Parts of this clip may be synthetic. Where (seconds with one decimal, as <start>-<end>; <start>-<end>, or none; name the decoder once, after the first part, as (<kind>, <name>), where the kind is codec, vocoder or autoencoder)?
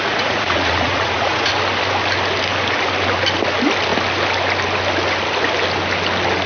0.0-1.5 (vocoder, Vocos)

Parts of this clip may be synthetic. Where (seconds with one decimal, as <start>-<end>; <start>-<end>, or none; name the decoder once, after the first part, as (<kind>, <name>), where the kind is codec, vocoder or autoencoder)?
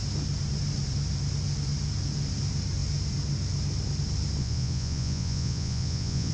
4.4-6.3 (vocoder, Vocos)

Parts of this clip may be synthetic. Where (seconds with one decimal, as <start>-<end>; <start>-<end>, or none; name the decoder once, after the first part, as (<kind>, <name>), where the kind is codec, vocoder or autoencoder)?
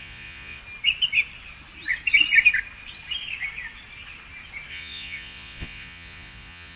0.0-0.6 (vocoder, Vocos); 4.7-6.8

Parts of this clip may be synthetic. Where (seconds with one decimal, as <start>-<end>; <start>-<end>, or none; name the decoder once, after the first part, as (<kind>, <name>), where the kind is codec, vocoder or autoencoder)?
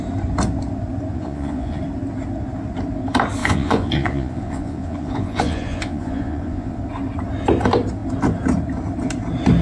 1.1-1.8 (vocoder, Vocos); 3.4-6.8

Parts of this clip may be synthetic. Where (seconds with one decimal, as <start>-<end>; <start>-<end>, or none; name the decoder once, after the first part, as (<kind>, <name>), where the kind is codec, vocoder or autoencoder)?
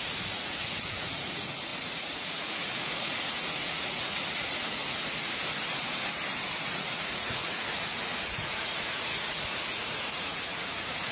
0.0-5.4 (vocoder, Vocos); 6.6-11.1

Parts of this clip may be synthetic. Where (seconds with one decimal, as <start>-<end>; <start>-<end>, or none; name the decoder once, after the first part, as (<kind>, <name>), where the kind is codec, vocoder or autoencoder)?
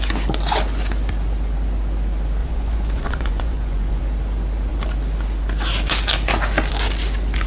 2.4-4.0 (vocoder, Vocos)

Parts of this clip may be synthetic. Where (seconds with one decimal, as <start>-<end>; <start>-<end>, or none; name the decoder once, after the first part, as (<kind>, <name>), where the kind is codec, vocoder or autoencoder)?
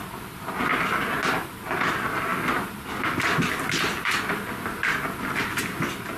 none